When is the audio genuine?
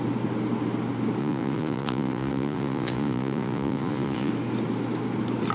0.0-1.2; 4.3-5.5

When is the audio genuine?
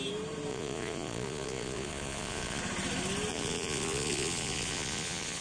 0.0-0.5; 2.6-3.3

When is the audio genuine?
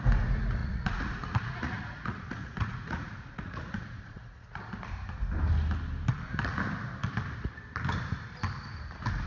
0.0-0.6; 4.6-9.3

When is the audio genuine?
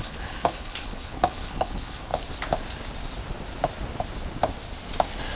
2.1-5.4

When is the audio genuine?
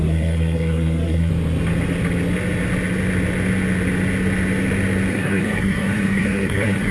1.3-5.1